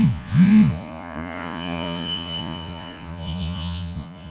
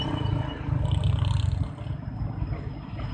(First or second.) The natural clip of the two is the second